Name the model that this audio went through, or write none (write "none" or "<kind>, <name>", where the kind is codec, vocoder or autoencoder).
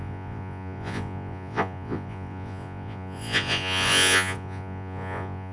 vocoder, Vocos